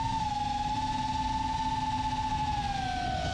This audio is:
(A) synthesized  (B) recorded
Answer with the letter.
B